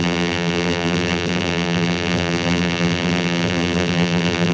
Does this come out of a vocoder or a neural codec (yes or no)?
yes